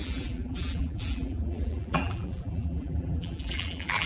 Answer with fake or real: fake